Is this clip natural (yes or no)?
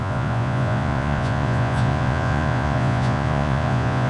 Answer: no